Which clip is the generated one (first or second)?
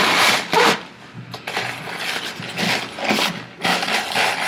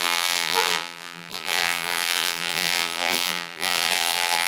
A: second